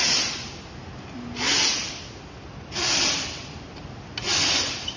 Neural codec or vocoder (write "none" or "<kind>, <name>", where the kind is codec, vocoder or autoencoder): none